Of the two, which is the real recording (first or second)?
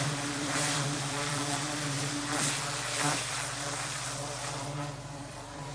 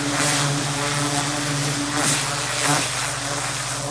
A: second